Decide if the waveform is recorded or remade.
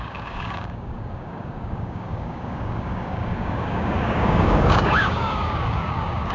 remade